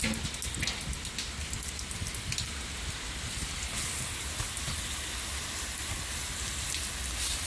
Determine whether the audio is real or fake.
real